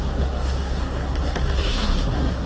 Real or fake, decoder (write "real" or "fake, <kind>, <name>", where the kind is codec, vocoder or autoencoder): fake, codec, SNAC